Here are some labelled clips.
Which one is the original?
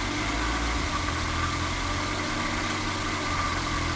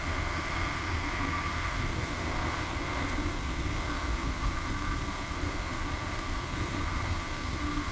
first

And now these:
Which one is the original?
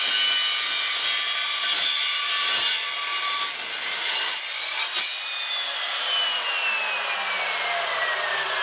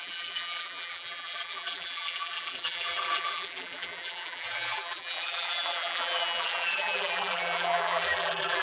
first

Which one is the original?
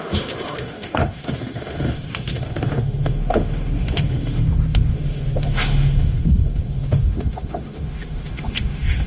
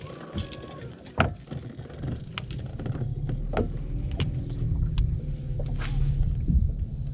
second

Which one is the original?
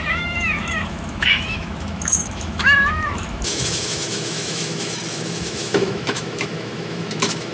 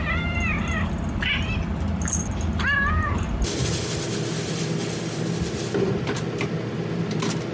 second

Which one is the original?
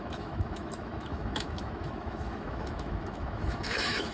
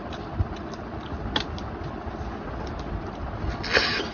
second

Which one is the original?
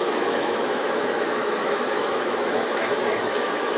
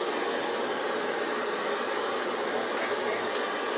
second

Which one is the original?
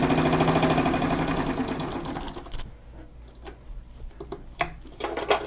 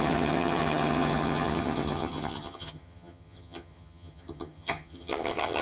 first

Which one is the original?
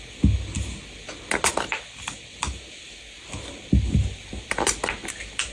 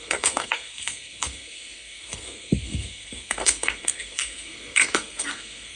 first